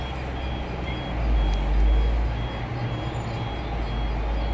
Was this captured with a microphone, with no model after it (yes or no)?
yes